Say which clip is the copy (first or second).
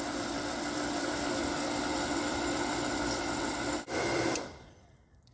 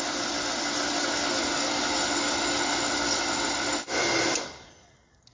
first